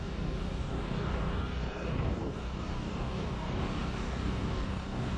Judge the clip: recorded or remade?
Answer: remade